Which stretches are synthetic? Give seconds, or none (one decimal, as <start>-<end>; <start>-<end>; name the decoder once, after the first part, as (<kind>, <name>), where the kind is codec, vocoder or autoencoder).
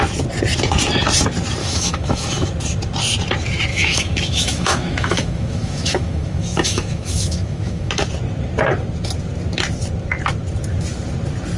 1.6-2.5 (autoencoder, DAC-VAE); 3.7-7.9